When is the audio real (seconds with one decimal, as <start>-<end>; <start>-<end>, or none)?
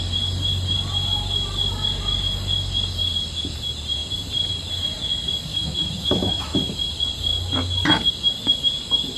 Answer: 0.0-5.5; 6.6-9.2